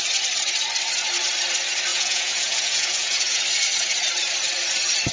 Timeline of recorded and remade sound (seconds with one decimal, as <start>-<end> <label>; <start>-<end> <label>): 0.0-1.9 recorded; 1.9-3.4 remade; 3.4-5.1 recorded